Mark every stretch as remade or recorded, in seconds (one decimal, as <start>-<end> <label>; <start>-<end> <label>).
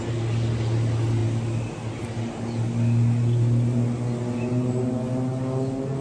0.0-6.0 recorded